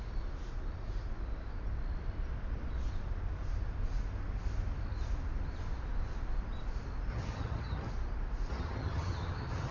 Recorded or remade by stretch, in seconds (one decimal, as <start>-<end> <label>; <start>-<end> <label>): 0.0-7.1 recorded; 7.1-7.9 remade; 7.9-8.5 recorded; 8.5-9.7 remade